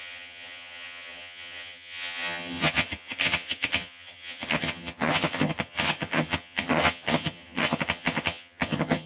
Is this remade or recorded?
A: remade